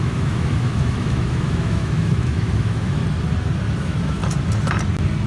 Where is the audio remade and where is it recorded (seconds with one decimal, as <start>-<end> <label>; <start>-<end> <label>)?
0.0-3.0 remade; 3.0-3.8 recorded; 3.8-4.2 remade; 4.2-5.3 recorded